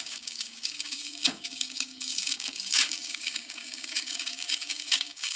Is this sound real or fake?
fake